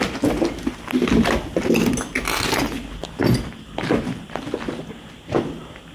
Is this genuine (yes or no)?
yes